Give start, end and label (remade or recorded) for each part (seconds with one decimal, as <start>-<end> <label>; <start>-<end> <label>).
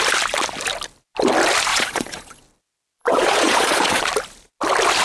0.0-1.7 recorded; 1.7-2.4 remade; 2.4-3.0 recorded; 3.0-4.0 remade; 4.0-5.0 recorded